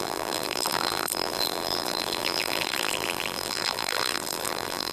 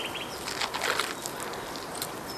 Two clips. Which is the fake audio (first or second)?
first